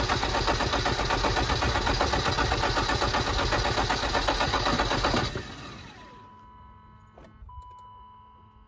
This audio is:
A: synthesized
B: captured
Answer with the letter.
B